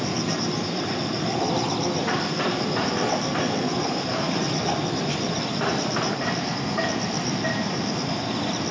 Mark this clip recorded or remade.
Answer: remade